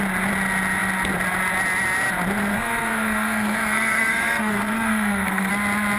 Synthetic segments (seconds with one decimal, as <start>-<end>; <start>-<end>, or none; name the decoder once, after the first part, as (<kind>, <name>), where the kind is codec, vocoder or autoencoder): 2.5-5.5 (codec, SNAC)